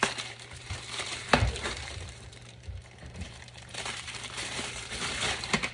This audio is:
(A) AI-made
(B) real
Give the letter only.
A